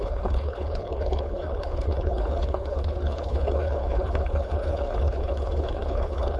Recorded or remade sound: remade